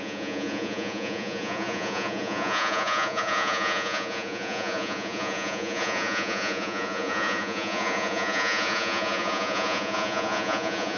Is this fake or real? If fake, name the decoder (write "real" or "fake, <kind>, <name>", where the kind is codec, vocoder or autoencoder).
fake, vocoder, Vocos